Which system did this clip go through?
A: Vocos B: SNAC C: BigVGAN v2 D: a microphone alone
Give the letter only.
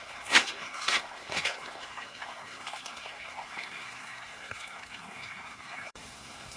B